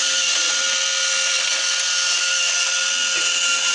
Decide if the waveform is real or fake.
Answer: real